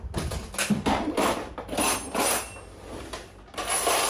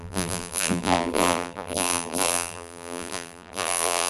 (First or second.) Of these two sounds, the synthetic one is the second